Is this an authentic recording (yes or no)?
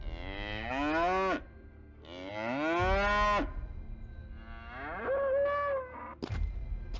yes